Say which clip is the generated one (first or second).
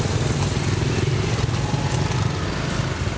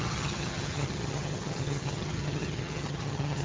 second